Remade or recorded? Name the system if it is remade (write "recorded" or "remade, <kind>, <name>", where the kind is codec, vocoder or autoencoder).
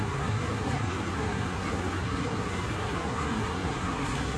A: remade, codec, SNAC